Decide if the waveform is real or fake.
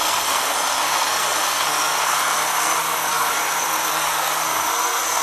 fake